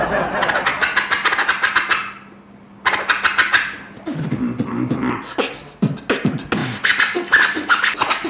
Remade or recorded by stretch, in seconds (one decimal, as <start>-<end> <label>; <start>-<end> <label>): 0.0-0.7 recorded; 0.7-1.7 remade; 1.7-8.3 recorded